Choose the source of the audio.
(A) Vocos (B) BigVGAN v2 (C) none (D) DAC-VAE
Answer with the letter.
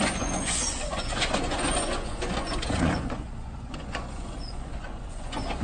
A